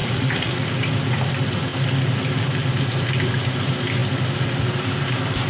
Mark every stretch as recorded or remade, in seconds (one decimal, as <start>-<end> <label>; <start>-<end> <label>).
0.0-0.5 remade; 0.5-5.5 recorded